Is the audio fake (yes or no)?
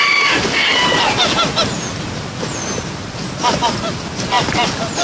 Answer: no